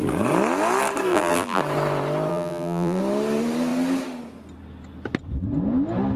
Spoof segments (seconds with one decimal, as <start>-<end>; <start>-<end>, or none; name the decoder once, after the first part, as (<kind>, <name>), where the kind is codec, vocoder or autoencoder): 1.1-1.6 (vocoder, BigVGAN v2); 2.3-3.0

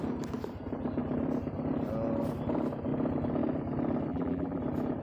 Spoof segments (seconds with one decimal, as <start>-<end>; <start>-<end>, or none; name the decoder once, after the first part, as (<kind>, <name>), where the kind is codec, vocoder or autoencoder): 4.1-4.6 (vocoder, BigVGAN v2)

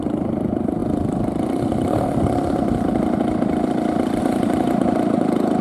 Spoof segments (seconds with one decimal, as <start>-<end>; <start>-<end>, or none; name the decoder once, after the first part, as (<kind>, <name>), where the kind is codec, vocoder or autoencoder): 0.0-0.8 (vocoder, BigVGAN v2); 4.2-5.6

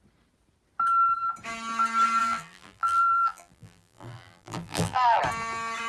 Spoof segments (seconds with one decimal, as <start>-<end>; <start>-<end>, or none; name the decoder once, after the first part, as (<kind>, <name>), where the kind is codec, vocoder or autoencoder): 2.2-5.2 (vocoder, BigVGAN v2)

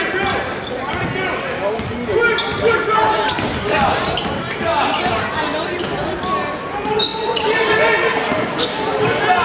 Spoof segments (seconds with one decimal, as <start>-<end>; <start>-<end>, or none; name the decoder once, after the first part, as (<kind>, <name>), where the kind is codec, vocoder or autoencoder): 2.7-4.2 (vocoder, BigVGAN v2); 7.1-9.0

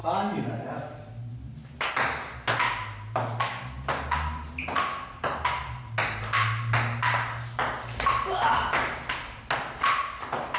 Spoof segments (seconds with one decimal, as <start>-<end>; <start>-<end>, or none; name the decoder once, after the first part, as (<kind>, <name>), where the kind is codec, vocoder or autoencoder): none